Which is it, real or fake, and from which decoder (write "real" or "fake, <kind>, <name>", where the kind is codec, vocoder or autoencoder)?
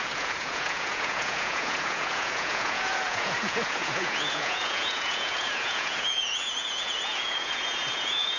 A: fake, vocoder, Vocos